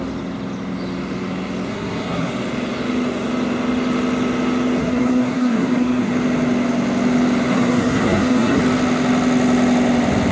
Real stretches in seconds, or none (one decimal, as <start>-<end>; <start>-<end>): 0.0-1.7; 2.3-4.8; 6.1-7.5; 8.6-10.3